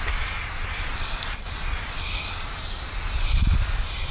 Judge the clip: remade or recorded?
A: recorded